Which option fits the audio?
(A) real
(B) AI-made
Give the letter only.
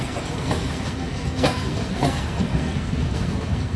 B